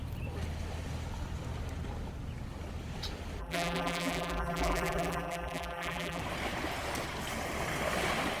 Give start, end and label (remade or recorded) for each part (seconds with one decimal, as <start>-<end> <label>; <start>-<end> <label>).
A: 0.0-3.4 recorded; 3.4-6.2 remade; 6.2-8.4 recorded